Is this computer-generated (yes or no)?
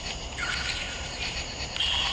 no